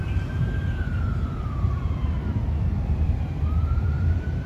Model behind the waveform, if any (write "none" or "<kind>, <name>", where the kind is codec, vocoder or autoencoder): vocoder, BigVGAN v2